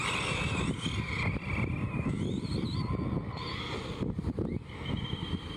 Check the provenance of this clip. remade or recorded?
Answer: recorded